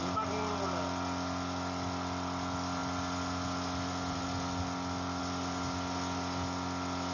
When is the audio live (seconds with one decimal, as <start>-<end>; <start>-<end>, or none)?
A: 0.0-7.1